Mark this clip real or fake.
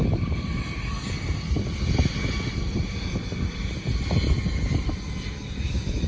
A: real